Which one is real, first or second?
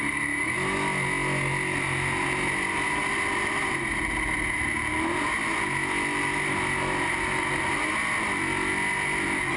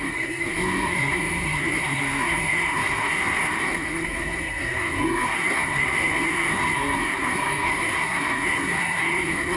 first